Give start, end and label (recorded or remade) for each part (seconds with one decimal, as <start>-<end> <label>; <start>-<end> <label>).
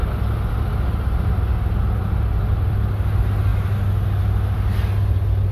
0.0-5.5 recorded